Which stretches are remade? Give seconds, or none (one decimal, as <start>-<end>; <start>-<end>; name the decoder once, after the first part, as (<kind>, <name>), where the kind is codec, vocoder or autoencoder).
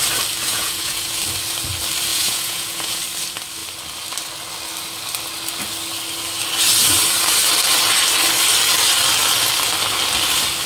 0.5-1.2 (vocoder, Vocos); 2.1-3.0